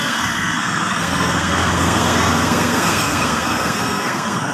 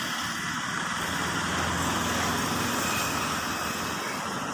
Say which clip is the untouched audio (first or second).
second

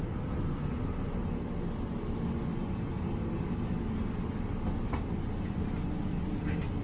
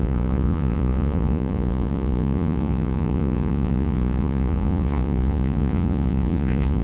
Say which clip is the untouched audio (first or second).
first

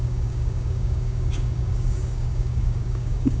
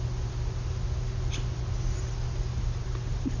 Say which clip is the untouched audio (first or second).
second